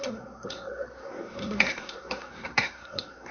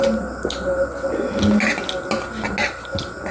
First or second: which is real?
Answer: second